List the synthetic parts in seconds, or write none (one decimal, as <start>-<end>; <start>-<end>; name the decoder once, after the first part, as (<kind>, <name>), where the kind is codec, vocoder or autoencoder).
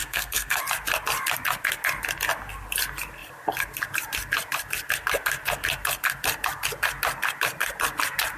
0.0-0.6 (codec, SNAC)